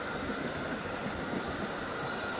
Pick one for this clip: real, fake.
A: real